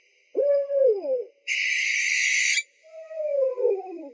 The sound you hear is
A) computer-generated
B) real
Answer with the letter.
A